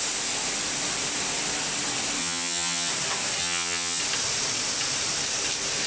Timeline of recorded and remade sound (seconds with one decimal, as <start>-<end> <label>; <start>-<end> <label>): 0.0-2.2 recorded; 2.2-2.9 remade; 2.9-3.4 recorded; 3.4-4.0 remade; 4.0-5.9 recorded